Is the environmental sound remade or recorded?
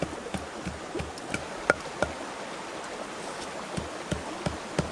recorded